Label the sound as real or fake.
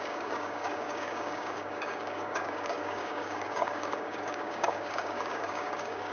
fake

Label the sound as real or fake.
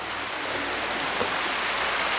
real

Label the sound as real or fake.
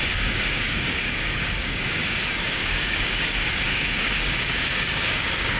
fake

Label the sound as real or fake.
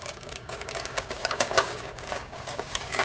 fake